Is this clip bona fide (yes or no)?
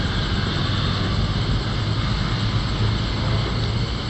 yes